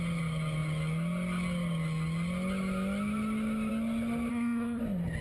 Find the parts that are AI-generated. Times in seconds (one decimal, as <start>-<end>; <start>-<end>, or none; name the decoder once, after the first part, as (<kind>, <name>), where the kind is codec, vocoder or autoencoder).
4.3-4.8 (codec, SNAC)

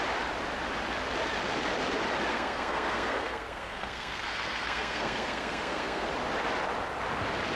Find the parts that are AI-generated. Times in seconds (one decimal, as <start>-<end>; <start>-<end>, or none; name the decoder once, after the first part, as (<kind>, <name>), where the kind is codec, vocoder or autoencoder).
2.3-6.1 (codec, SNAC)

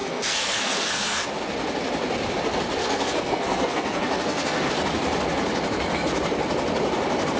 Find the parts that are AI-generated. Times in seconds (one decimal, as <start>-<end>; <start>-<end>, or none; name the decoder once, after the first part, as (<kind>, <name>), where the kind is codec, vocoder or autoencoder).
0.0-1.3 (codec, SNAC); 2.8-4.7

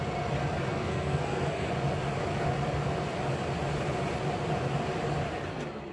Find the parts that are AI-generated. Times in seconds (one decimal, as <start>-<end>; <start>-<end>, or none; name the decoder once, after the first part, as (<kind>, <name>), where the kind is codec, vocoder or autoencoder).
0.7-1.7 (codec, SNAC)

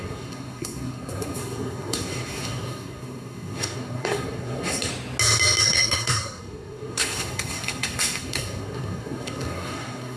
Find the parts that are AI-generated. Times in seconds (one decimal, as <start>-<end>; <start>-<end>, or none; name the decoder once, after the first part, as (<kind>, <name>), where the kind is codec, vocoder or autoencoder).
0.0-4.9 (codec, SNAC); 5.6-10.2

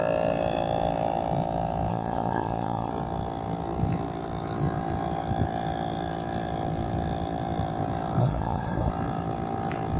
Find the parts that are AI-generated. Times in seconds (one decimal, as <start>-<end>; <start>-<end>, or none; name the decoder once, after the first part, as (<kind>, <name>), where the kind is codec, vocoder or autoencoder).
1.9-2.9 (codec, SNAC); 8.2-8.9

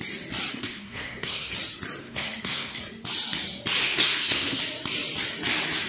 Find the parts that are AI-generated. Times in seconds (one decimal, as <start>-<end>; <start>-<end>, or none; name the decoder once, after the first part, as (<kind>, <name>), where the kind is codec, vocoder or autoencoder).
0.5-1.5 (codec, SNAC); 2.0-2.8; 3.8-4.6

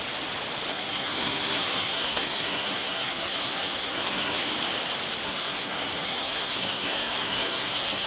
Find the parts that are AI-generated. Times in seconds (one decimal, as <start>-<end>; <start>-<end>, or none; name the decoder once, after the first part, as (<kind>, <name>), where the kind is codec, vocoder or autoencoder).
0.7-4.5 (codec, SNAC); 5.2-8.1